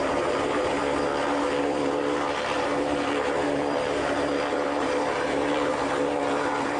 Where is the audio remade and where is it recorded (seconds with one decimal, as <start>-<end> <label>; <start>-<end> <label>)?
0.0-0.8 remade; 0.8-1.6 recorded; 1.6-6.8 remade